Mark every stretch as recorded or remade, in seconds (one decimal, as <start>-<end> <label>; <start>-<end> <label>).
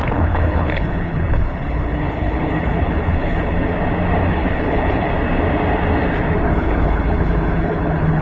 0.0-3.7 remade; 3.7-4.3 recorded; 4.3-5.1 remade; 5.1-6.5 recorded; 6.5-8.2 remade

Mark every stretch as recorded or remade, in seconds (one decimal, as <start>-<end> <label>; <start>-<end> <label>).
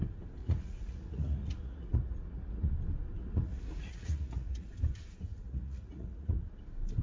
0.0-0.4 recorded; 0.4-2.7 remade; 2.7-3.2 recorded; 3.2-4.7 remade; 4.7-5.3 recorded; 5.3-6.4 remade; 6.4-7.0 recorded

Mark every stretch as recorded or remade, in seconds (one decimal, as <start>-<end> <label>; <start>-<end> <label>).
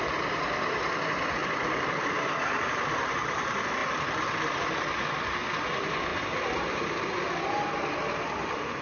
0.0-1.4 recorded; 1.4-2.1 remade; 2.1-3.8 recorded; 3.8-4.9 remade; 4.9-8.8 recorded